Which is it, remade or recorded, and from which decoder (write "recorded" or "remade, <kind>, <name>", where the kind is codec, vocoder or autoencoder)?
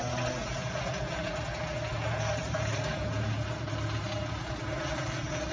recorded